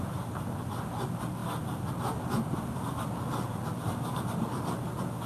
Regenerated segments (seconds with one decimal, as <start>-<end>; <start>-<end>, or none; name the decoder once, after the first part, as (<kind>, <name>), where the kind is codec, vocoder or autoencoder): none